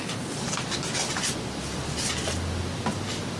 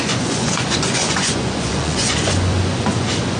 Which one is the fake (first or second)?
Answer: second